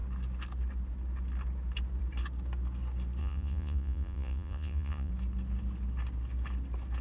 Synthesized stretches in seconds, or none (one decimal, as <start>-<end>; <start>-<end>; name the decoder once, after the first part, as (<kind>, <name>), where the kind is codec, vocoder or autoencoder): 3.2-5.1 (vocoder, Vocos)